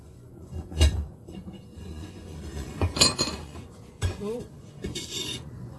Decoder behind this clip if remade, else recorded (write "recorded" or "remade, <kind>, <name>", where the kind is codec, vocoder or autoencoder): remade, vocoder, Vocos